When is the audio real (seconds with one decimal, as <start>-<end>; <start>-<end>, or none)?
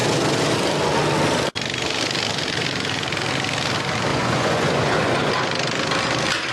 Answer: 0.0-4.1; 5.3-6.5